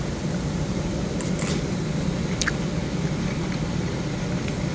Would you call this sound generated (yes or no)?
no